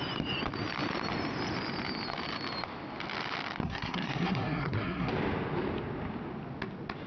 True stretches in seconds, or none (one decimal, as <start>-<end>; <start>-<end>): 0.0-3.6; 5.1-7.1